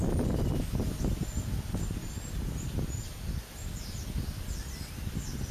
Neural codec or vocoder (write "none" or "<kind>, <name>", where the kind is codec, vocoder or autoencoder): none